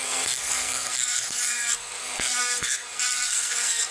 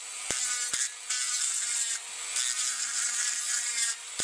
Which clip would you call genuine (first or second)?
second